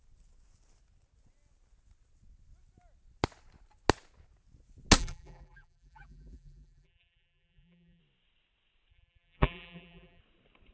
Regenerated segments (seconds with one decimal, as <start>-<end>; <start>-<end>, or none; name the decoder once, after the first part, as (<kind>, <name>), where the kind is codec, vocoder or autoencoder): 5.0-8.0 (vocoder, BigVGAN v2); 8.9-10.2